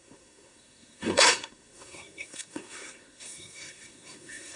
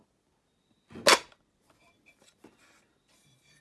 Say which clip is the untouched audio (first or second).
second